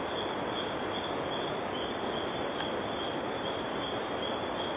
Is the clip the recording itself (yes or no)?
yes